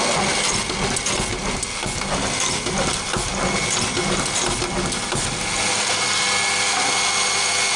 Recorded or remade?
recorded